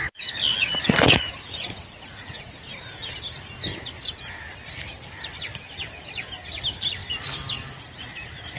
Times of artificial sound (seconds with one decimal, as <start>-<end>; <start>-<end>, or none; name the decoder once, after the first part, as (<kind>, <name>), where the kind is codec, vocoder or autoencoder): 0.6-2.8 (vocoder, Vocos)